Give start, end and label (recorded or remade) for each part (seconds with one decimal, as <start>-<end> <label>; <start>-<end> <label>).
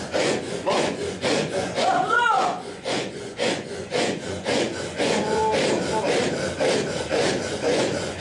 0.0-5.4 remade; 5.4-6.9 recorded; 6.9-8.2 remade